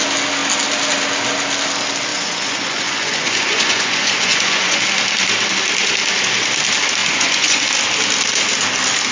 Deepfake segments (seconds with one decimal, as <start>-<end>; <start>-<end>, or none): 2.1-4.8; 7.0-7.6